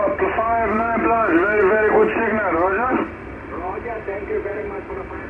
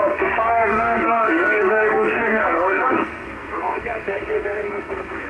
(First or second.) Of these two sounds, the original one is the first